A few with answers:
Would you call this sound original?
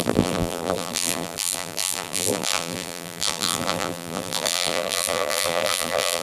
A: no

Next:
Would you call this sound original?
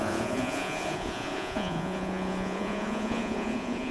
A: no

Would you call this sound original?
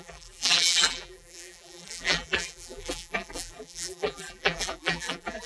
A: no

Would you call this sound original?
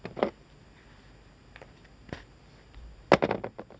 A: yes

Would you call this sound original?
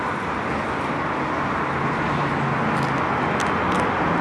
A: yes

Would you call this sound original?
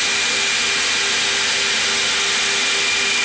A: yes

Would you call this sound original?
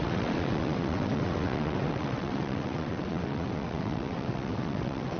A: no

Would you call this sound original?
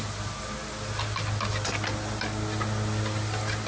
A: yes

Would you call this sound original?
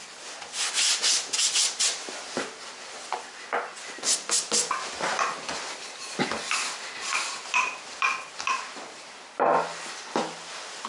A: yes